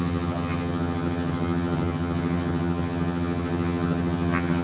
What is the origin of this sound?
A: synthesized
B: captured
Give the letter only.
A